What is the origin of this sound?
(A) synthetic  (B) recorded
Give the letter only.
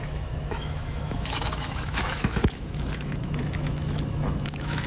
A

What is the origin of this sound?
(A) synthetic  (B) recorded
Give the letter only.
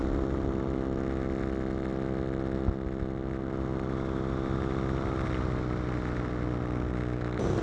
B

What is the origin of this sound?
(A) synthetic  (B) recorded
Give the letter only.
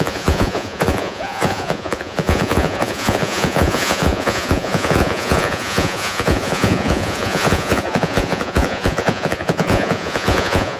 A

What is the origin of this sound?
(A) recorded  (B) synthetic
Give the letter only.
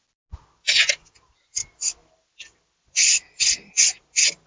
A